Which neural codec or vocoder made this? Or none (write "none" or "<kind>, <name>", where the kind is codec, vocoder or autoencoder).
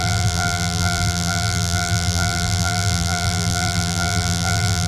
vocoder, BigVGAN v2